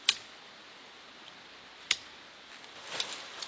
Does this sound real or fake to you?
real